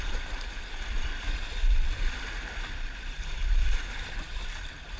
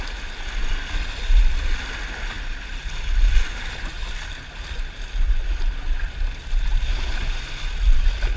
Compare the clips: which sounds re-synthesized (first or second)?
first